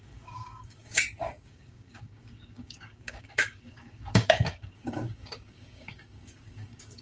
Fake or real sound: fake